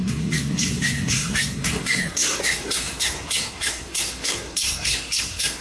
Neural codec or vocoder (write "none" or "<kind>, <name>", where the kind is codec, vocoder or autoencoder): codec, SNAC